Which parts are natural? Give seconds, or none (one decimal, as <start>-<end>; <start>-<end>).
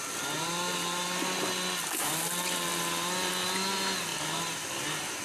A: 0.0-5.2